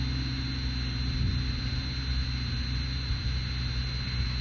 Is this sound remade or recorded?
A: recorded